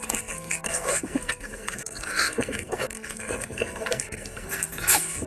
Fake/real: fake